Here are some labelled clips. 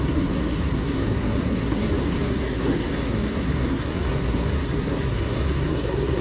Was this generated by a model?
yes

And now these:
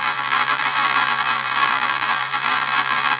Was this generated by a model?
yes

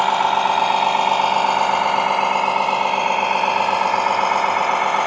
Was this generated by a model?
no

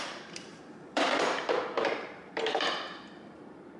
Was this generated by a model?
yes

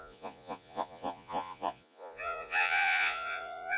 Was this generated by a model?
yes